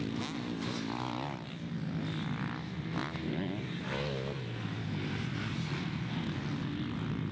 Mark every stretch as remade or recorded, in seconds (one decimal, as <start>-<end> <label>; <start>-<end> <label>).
0.0-7.3 recorded